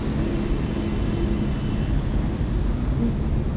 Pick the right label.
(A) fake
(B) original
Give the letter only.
B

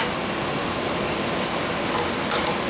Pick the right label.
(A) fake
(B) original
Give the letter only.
B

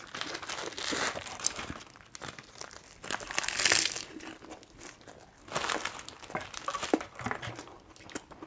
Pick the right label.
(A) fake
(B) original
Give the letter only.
B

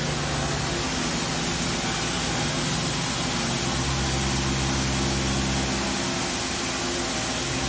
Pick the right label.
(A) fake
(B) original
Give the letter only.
B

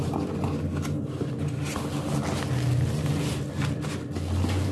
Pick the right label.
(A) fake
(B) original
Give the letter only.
B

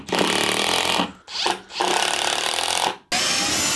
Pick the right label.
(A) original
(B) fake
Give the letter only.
A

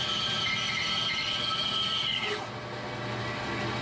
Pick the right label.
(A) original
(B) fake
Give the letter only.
A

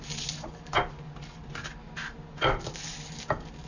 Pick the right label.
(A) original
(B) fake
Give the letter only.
A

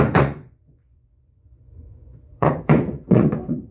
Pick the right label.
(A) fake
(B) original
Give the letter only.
A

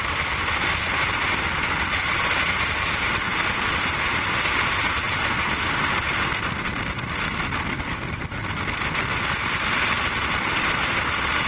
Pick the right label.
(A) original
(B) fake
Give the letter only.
A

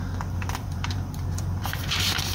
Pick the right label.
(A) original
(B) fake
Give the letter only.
B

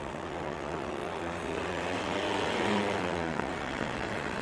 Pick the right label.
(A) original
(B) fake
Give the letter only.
B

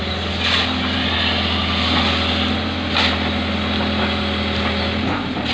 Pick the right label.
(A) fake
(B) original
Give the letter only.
B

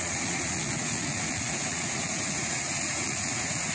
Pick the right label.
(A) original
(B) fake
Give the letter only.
B